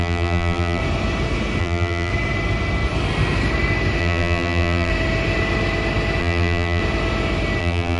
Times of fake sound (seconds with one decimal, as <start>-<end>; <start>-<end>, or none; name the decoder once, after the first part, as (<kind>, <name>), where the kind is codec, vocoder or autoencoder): 0.0-0.8 (vocoder, BigVGAN v2); 1.6-2.1; 4.0-4.9; 6.2-6.8; 7.6-8.0